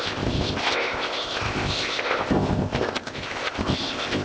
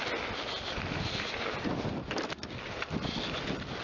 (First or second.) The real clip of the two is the second